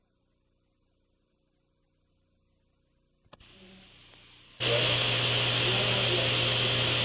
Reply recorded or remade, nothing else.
recorded